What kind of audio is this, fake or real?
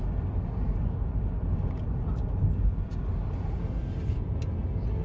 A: real